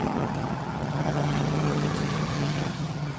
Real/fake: fake